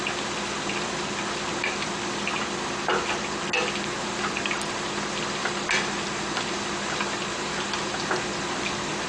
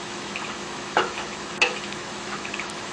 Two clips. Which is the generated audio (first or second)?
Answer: second